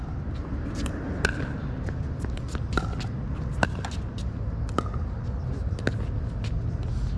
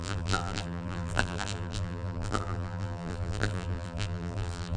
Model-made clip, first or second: second